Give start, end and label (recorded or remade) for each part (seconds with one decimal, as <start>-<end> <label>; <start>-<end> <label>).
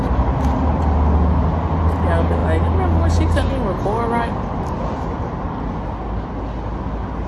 0.0-7.3 recorded